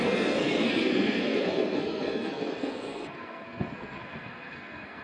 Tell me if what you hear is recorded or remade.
remade